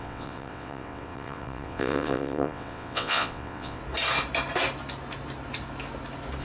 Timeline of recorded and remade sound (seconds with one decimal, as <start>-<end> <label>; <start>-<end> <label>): 0.0-3.8 remade; 3.8-6.4 recorded